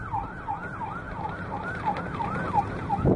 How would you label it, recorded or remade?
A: recorded